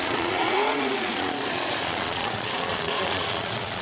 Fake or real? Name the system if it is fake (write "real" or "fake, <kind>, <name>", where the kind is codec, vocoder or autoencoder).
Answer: fake, vocoder, Vocos